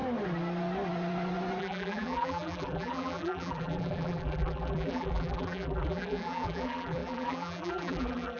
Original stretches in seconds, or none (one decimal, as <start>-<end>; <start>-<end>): 0.0-1.6